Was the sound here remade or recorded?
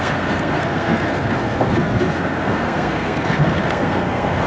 remade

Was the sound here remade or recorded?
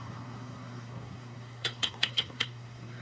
remade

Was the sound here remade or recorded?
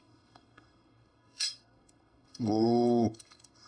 remade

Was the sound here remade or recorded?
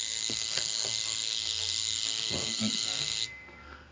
remade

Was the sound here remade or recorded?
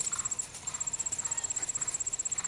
recorded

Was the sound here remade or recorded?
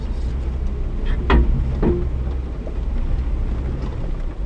recorded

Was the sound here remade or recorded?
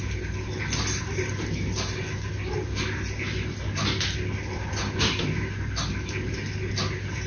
recorded